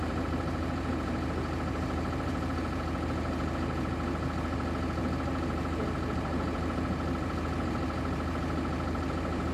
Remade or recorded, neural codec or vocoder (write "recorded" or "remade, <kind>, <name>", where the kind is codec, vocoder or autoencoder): recorded